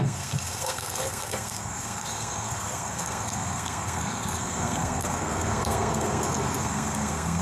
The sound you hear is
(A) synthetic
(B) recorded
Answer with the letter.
A